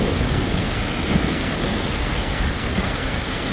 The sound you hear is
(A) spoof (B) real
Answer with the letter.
A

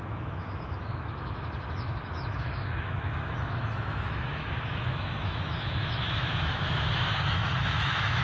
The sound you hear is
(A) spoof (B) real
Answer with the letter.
A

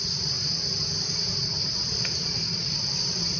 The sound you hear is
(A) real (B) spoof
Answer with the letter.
B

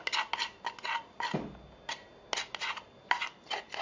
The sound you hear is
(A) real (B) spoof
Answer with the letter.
A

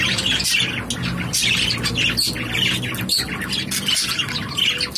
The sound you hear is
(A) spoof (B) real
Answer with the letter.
B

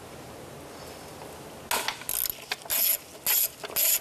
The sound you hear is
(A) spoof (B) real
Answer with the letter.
B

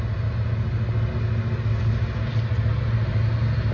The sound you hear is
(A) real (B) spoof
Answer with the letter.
A